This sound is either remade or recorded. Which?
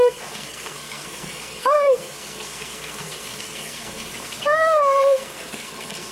remade